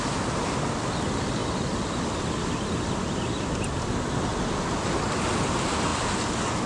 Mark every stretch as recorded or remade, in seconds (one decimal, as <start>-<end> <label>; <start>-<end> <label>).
0.0-6.7 recorded